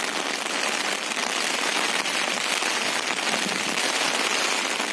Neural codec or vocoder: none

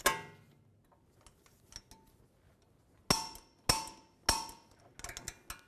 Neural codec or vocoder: none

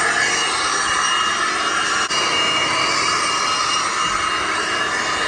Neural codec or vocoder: none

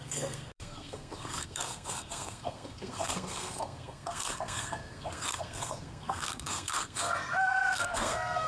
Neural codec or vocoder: codec, SNAC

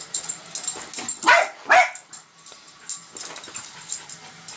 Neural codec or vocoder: none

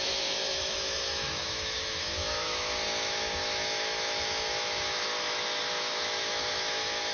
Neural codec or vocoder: autoencoder, DAC-VAE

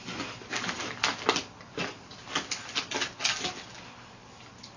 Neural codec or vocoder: none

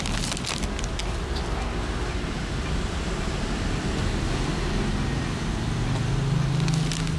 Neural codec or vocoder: none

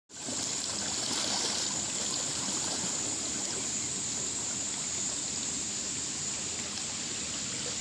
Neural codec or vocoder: none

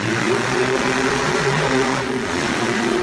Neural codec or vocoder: vocoder, Vocos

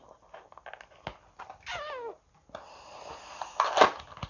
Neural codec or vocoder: none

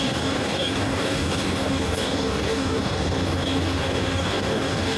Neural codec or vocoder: codec, DAC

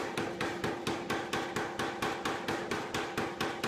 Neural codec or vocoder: none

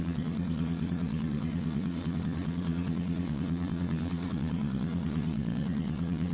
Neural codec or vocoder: vocoder, Vocos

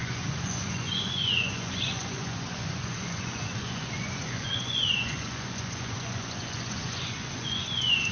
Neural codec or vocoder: vocoder, Vocos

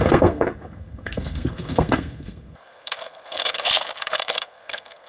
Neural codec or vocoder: codec, SNAC